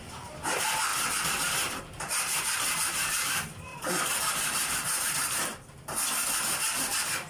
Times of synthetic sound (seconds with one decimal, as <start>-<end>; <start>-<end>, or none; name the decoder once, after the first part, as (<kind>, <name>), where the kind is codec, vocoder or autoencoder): 0.0-0.9 (vocoder, BigVGAN v2); 1.7-3.7; 4.3-5.5; 6.4-7.3